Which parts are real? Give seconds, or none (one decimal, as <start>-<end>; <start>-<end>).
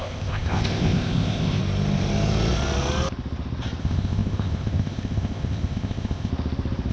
1.6-3.8; 6.3-6.9